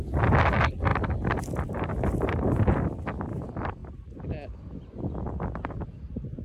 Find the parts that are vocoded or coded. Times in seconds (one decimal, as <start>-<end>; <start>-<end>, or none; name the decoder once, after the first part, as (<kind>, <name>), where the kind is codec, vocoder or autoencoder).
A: none